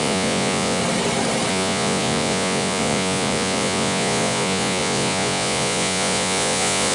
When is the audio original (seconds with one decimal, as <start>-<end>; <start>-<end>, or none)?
0.8-1.5